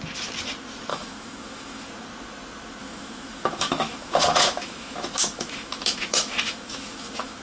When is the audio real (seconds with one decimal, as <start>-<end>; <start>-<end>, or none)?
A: 0.0-0.9; 1.9-2.8